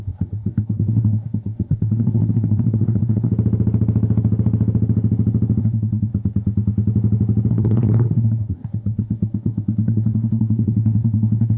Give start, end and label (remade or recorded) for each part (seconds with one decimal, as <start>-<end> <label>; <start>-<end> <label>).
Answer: 0.0-3.3 remade; 3.3-5.6 recorded; 5.6-6.1 remade; 6.1-7.5 recorded; 7.5-11.6 remade